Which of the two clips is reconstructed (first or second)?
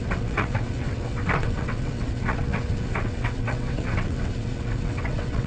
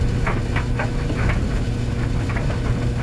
first